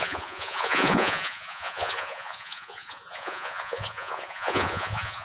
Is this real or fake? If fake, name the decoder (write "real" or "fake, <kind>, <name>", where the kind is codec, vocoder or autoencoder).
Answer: fake, vocoder, Vocos